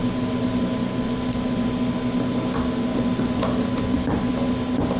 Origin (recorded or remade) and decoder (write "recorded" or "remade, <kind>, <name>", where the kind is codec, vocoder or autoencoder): recorded